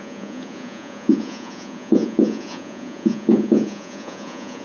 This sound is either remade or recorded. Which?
remade